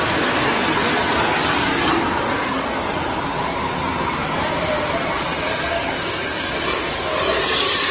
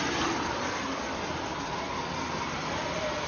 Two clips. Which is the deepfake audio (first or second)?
second